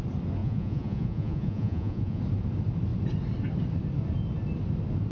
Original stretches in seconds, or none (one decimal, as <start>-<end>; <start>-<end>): 0.0-0.4; 2.2-5.1